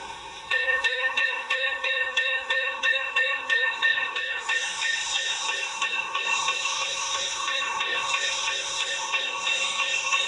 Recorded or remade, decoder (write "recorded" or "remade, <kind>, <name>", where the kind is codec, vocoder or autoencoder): remade, codec, SNAC